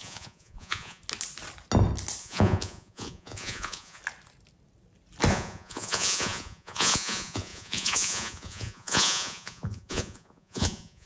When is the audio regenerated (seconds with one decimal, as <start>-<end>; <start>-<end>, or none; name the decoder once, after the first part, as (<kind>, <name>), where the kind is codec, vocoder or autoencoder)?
0.0-1.0 (vocoder, Vocos); 2.2-4.0; 5.3-11.1